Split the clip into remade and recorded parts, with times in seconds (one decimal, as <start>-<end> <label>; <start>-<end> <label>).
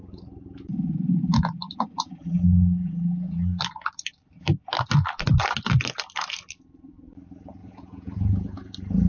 0.0-7.6 recorded; 7.6-8.7 remade; 8.7-9.1 recorded